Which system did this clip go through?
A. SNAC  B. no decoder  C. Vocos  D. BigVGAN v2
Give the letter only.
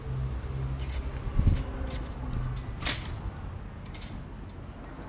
B